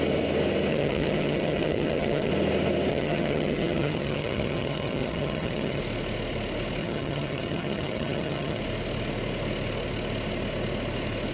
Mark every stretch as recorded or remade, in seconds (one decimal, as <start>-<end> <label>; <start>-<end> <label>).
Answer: 0.0-0.7 recorded; 0.7-2.3 remade; 2.3-2.9 recorded; 2.9-5.8 remade; 5.8-6.8 recorded; 6.8-8.6 remade; 8.6-11.3 recorded